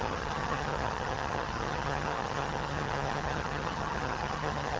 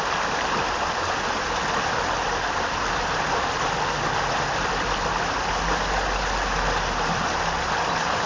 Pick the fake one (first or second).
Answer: first